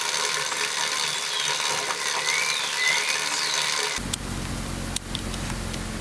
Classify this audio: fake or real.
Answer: real